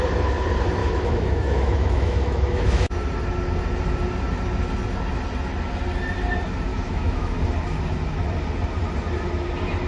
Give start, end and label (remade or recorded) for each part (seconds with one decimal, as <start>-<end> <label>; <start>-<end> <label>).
0.0-0.8 recorded; 0.8-2.9 remade; 2.9-6.7 recorded; 6.7-7.4 remade; 7.4-9.9 recorded